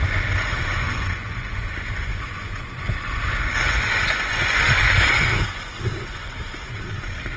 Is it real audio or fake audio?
fake